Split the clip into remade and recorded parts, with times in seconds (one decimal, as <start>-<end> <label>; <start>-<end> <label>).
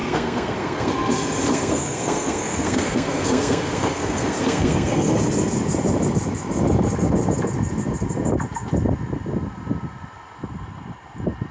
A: 0.0-0.9 remade; 0.9-1.5 recorded; 1.5-5.2 remade; 5.2-11.5 recorded